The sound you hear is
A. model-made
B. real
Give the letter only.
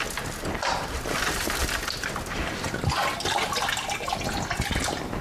B